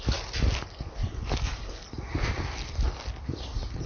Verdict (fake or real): real